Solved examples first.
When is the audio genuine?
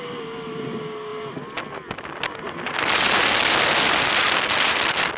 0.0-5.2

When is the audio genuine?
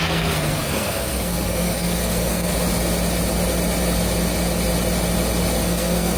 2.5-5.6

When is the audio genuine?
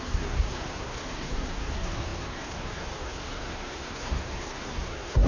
none